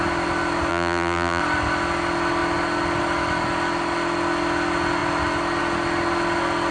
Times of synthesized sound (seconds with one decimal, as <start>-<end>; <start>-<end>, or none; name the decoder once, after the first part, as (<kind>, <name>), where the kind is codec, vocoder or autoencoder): 0.7-1.4 (vocoder, BigVGAN v2)